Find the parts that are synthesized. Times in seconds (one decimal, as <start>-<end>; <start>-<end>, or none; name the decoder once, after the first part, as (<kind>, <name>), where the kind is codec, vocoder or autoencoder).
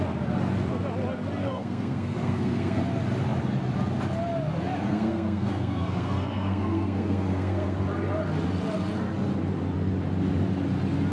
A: 1.4-2.8 (codec, SNAC); 4.9-7.8